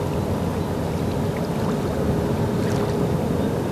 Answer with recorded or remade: recorded